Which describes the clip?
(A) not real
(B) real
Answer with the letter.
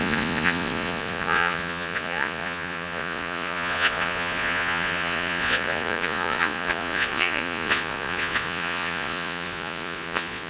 A